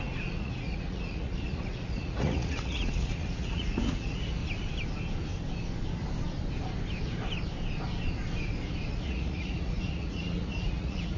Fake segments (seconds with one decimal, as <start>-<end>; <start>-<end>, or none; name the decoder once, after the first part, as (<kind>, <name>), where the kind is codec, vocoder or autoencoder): 0.0-4.4 (vocoder, Vocos); 8.9-11.2